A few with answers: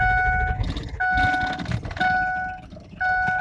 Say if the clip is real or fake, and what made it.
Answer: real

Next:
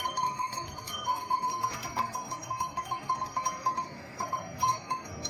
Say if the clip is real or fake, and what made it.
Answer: fake, codec, SNAC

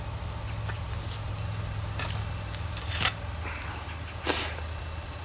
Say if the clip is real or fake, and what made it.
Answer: real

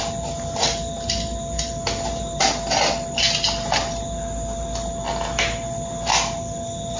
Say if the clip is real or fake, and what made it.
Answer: real